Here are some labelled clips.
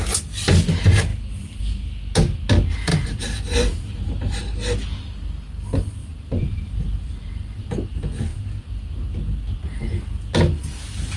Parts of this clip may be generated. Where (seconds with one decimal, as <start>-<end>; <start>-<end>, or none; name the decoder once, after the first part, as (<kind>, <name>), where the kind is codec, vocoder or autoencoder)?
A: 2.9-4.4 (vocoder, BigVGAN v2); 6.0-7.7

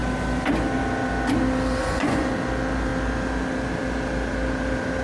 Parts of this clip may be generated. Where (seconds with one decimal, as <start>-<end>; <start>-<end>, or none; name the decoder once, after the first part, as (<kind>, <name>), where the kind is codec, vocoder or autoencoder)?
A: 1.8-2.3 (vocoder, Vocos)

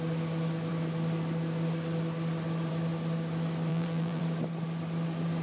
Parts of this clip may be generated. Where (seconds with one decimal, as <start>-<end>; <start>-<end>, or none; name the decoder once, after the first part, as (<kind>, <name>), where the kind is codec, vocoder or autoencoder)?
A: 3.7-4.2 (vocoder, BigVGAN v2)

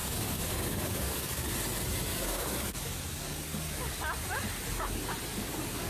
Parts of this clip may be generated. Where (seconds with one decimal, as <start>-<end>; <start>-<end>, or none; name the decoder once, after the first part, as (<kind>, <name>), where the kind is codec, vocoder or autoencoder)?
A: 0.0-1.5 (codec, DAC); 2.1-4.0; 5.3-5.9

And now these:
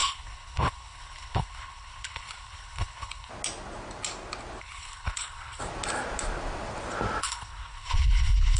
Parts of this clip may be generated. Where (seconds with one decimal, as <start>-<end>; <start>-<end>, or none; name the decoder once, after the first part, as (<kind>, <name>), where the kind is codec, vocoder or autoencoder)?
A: 0.0-3.3 (codec, HILCodec); 4.6-5.6; 7.2-8.6

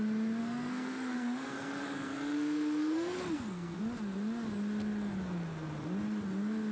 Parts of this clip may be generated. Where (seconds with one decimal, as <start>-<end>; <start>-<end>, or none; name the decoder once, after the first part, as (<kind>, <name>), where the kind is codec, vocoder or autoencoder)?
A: 0.4-3.8 (codec, SNAC)

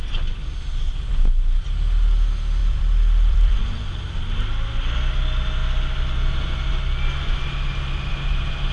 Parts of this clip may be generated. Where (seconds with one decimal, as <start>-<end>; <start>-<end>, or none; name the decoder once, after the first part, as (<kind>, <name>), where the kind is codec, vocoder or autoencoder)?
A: 2.6-4.0 (vocoder, BigVGAN v2)

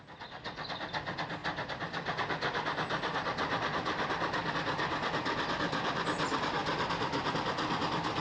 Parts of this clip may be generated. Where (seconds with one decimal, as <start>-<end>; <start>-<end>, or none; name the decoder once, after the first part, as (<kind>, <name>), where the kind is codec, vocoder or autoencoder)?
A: none